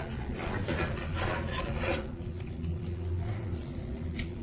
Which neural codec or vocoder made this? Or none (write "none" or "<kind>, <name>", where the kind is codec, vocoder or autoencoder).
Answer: vocoder, Vocos